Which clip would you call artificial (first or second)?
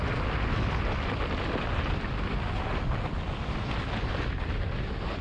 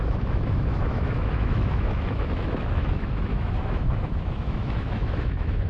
second